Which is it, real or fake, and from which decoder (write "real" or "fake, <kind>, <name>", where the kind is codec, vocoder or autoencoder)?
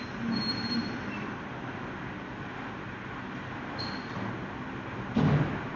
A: real